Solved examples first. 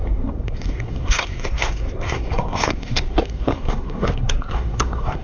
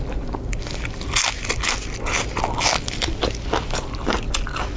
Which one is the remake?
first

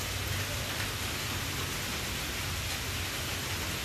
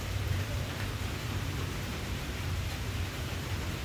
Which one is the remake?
second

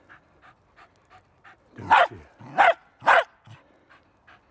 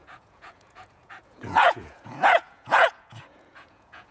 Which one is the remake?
second